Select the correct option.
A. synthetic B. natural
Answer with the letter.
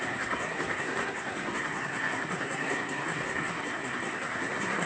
A